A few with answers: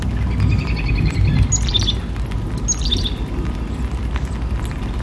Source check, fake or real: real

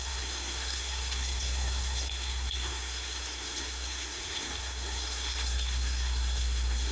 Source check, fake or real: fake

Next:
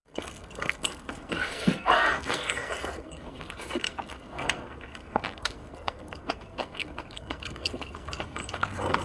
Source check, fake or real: fake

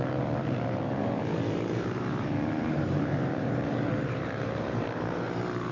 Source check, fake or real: fake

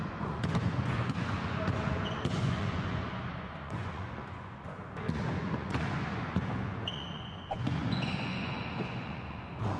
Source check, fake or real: fake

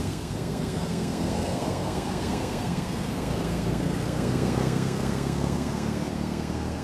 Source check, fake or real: fake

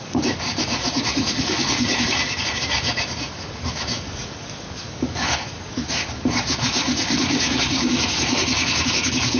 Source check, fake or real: fake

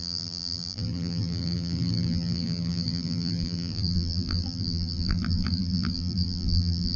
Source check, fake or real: fake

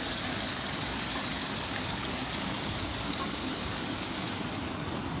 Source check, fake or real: fake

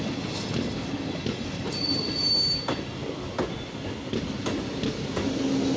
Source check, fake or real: real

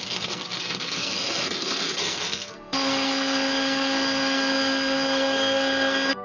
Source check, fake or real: fake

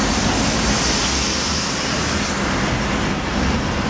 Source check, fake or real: real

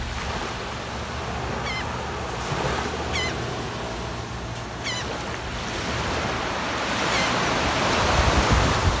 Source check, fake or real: real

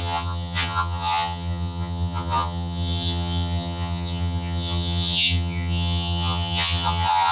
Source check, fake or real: fake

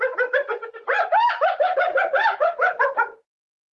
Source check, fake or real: fake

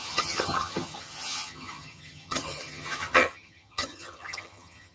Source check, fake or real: fake